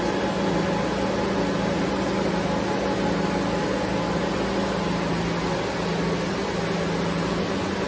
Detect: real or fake real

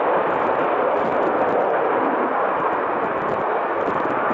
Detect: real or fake real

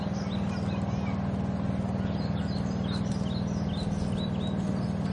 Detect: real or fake real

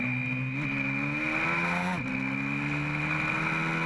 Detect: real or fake real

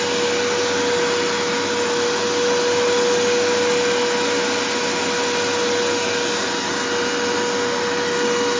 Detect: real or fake real